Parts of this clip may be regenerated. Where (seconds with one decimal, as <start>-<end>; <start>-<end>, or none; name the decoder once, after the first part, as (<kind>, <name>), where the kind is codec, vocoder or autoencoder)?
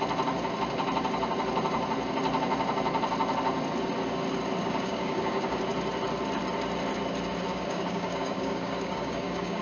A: 4.6-5.6 (codec, DAC); 7.5-9.6